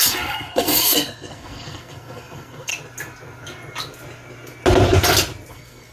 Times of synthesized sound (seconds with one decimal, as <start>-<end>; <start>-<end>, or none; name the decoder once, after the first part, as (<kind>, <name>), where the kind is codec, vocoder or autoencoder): 0.0-2.7 (codec, SNAC); 5.5-5.9